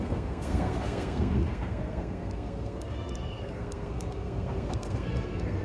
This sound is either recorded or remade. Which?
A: remade